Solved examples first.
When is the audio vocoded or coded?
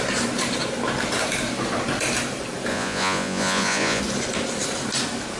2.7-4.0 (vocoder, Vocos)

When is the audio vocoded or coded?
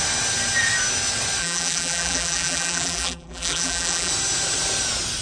1.4-4.1 (vocoder, BigVGAN v2)